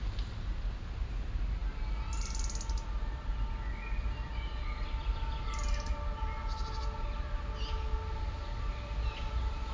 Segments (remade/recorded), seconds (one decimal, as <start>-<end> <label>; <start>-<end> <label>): 0.0-9.7 recorded